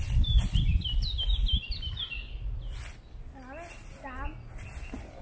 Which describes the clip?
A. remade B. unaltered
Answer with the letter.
B